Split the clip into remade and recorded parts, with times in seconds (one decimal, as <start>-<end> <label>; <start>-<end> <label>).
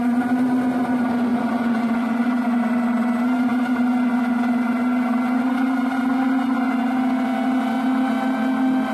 0.0-1.3 recorded; 1.3-2.3 remade; 2.3-8.9 recorded